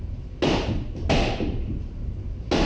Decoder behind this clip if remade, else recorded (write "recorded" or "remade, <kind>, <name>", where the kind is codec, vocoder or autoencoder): recorded